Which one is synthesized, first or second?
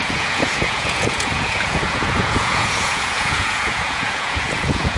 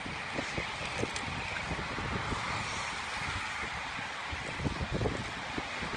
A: first